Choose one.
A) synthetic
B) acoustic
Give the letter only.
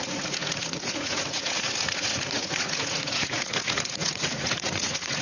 A